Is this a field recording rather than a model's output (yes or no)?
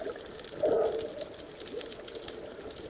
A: yes